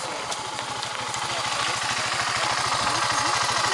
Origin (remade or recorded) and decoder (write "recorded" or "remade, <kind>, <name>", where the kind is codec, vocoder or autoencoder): recorded